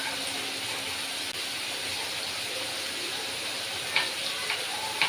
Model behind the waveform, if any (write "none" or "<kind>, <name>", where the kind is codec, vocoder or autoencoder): none